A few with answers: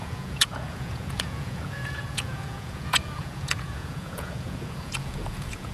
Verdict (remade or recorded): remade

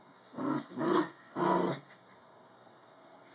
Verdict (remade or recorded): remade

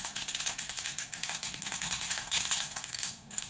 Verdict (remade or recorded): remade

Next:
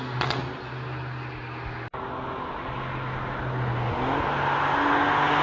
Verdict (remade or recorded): recorded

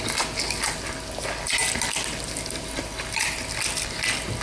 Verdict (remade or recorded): recorded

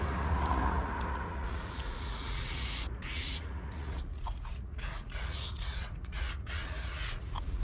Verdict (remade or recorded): remade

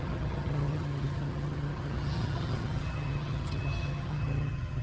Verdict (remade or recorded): remade